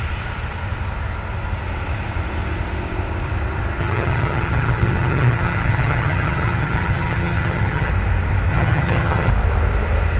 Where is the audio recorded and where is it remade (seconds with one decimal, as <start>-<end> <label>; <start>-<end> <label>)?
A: 0.0-3.8 recorded; 3.8-7.9 remade; 7.9-8.5 recorded; 8.5-9.3 remade; 9.3-10.2 recorded